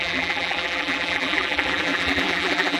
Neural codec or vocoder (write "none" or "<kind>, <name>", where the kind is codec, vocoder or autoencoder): vocoder, BigVGAN v2